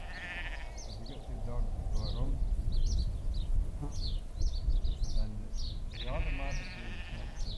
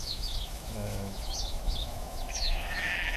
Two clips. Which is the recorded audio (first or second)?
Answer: first